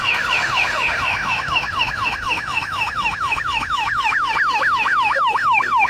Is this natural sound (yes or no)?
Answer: no